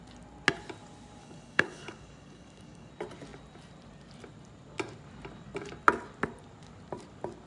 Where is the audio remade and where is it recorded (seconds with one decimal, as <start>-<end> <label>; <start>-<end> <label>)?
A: 0.0-1.2 recorded; 1.2-2.9 remade; 2.9-7.5 recorded